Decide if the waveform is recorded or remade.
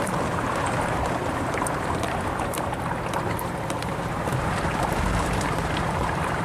remade